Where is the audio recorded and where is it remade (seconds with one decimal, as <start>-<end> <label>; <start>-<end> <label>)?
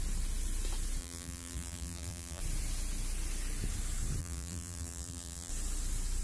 0.0-1.0 recorded; 1.0-2.4 remade; 2.4-4.2 recorded; 4.2-5.5 remade; 5.5-6.2 recorded